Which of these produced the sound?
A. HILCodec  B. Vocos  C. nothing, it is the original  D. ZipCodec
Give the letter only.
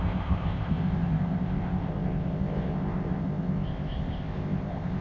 D